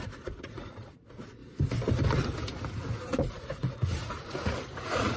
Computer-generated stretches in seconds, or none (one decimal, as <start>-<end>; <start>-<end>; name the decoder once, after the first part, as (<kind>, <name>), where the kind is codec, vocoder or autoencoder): 0.0-1.4 (vocoder, Vocos); 3.2-5.2